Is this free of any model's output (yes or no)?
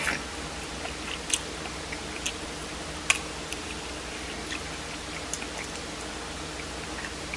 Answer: yes